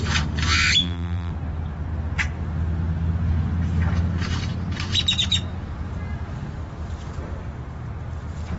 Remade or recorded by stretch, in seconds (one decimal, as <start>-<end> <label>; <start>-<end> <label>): 0.0-0.8 recorded; 0.8-1.3 remade; 1.3-8.6 recorded